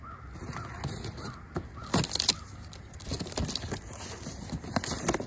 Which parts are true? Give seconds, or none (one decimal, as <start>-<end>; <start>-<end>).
0.0-5.3